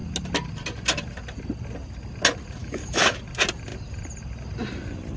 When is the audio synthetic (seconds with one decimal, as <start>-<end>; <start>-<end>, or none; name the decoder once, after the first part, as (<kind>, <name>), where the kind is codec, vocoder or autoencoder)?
2.6-3.2 (autoencoder, DAC-VAE)